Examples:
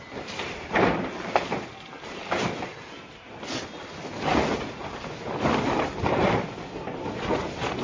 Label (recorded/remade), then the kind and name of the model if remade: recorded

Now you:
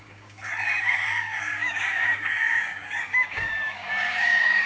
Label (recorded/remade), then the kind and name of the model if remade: remade, codec, DAC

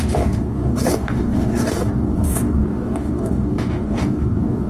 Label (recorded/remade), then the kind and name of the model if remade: remade, codec, DAC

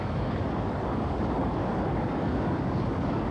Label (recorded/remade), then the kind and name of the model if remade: remade, codec, DAC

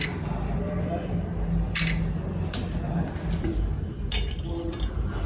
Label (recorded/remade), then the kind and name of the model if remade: recorded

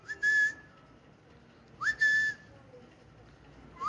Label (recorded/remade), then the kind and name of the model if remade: recorded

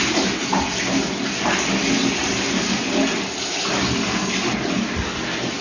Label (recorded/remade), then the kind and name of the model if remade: recorded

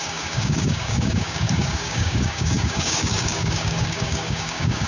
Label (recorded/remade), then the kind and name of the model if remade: remade, codec, DAC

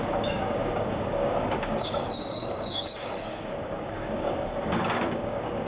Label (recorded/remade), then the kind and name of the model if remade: remade, codec, DAC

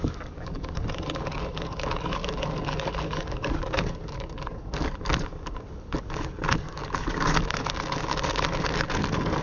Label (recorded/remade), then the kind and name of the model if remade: remade, codec, DAC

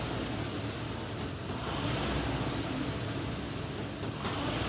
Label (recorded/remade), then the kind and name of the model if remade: recorded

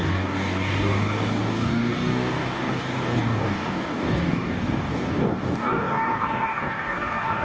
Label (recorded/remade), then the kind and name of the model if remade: remade, codec, DAC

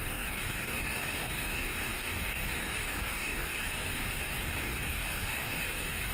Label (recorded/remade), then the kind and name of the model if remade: remade, codec, DAC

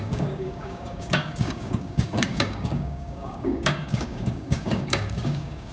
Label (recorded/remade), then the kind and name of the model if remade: remade, codec, DAC